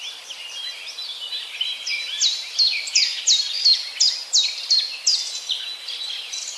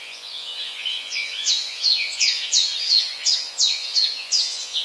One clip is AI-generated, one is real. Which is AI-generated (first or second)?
second